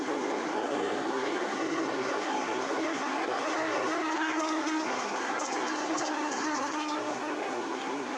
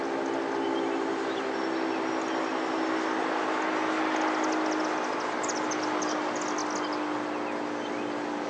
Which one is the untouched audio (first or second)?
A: second